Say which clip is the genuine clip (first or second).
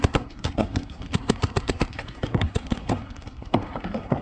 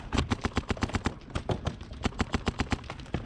second